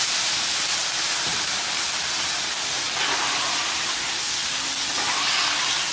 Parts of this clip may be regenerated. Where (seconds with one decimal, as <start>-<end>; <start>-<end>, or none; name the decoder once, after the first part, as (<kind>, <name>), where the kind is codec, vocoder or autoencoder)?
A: none